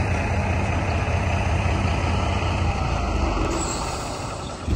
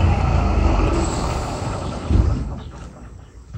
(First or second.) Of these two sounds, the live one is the first